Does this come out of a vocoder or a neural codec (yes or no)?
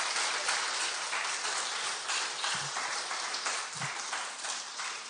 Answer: yes